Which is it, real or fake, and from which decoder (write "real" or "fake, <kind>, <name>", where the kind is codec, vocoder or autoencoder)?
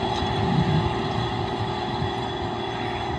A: real